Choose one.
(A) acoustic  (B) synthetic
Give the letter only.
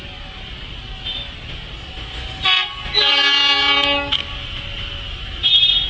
A